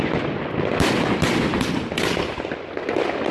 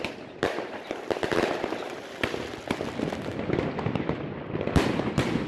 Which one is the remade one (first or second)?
second